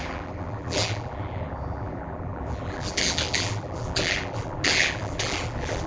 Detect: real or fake fake